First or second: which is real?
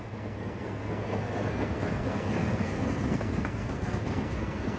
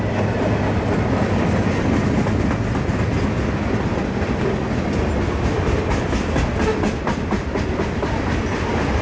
second